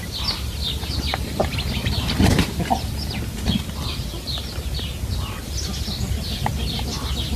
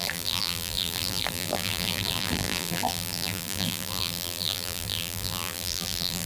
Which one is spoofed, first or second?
second